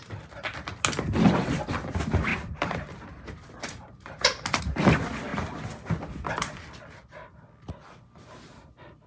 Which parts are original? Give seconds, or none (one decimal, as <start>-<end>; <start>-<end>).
0.0-2.3; 4.6-9.1